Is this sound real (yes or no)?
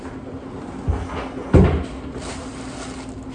yes